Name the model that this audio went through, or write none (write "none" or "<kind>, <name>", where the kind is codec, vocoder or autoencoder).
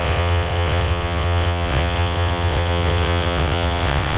vocoder, WaveNeXt